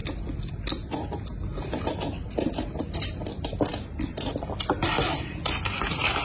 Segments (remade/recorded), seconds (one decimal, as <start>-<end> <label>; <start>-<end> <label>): 0.0-0.5 remade; 0.5-1.4 recorded; 1.4-2.3 remade; 2.3-3.7 recorded; 3.7-5.5 remade; 5.5-6.2 recorded